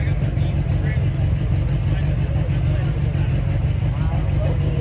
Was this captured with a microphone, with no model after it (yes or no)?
yes